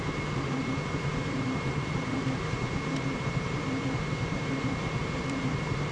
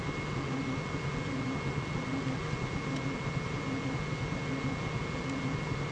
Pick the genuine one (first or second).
second